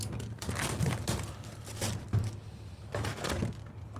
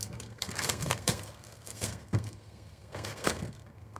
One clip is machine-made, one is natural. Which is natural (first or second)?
first